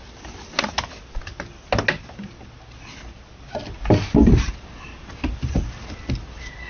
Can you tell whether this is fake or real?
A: real